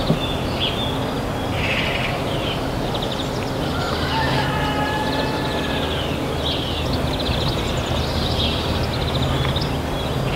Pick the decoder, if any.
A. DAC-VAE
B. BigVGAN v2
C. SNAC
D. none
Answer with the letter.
D